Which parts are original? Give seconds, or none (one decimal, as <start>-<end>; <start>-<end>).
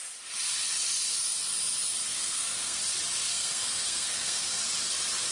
0.0-2.1; 2.8-3.2; 4.6-5.3